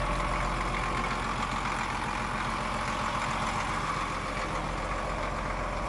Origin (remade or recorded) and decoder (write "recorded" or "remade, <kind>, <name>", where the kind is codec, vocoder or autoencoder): recorded